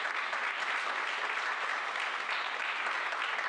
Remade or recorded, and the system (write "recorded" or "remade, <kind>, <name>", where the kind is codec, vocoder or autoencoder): recorded